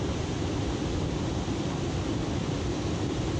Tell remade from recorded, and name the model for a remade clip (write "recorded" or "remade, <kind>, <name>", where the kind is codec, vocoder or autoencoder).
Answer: recorded